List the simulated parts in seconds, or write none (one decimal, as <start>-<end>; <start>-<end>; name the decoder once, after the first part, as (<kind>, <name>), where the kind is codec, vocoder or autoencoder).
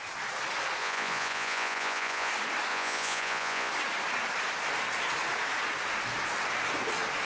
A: 0.8-2.3 (vocoder, Vocos); 2.7-3.7